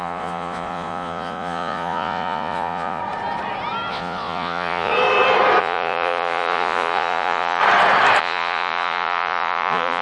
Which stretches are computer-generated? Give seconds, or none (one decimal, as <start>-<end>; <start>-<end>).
0.0-3.0; 3.9-4.9; 5.6-7.6; 8.2-10.0

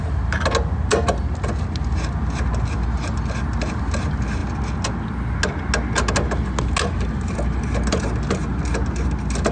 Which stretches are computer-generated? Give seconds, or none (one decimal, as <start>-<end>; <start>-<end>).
none

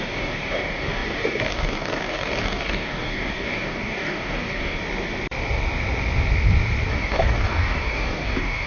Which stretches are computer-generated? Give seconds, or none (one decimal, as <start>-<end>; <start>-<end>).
0.0-4.8; 6.9-8.7

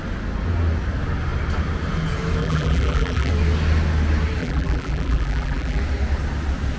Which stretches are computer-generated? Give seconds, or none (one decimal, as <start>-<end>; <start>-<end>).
2.4-3.3; 4.4-5.8

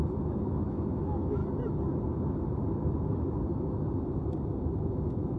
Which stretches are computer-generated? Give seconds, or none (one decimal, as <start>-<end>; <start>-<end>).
0.0-1.4; 4.6-5.4

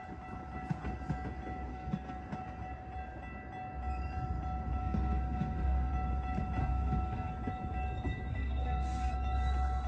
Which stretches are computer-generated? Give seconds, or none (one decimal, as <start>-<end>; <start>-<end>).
1.7-2.2; 4.8-5.9; 6.6-7.3; 8.3-9.1

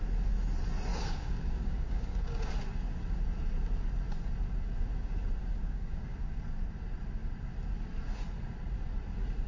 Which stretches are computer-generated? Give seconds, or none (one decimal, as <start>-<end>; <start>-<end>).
0.9-2.5; 5.4-6.4